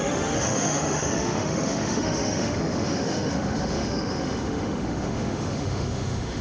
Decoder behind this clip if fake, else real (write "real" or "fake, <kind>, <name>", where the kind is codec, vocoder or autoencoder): fake, autoencoder, DAC-VAE